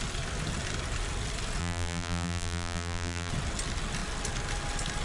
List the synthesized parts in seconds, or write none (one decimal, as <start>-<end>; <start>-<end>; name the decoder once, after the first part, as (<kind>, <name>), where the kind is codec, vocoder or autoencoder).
1.6-3.3 (vocoder, BigVGAN v2)